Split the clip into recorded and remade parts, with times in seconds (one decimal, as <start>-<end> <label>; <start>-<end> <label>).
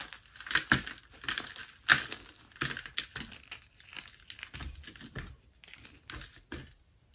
0.0-7.1 recorded